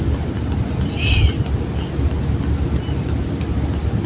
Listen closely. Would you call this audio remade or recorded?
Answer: recorded